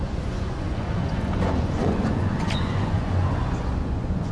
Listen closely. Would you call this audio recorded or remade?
remade